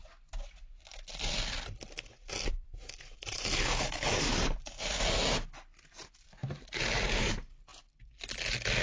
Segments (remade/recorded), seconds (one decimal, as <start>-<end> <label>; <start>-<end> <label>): 0.0-2.5 recorded; 2.5-4.9 remade; 4.9-6.4 recorded; 6.4-7.3 remade; 7.3-8.8 recorded